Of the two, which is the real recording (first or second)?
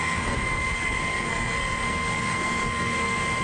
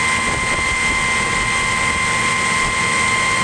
second